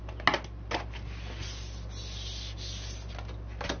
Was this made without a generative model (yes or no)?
yes